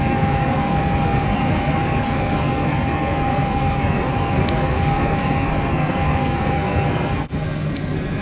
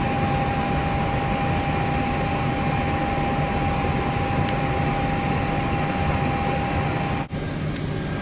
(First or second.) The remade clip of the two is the first